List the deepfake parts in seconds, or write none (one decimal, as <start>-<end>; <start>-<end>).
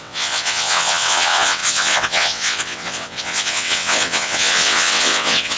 0.0-5.6